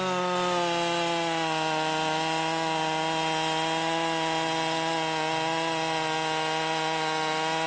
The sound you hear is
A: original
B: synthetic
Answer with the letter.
A